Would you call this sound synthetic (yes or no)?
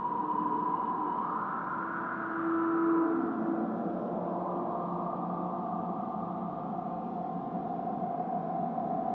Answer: no